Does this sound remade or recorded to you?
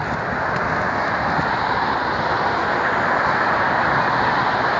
recorded